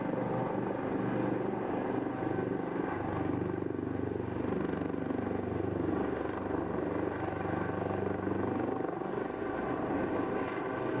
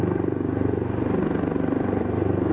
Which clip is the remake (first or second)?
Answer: second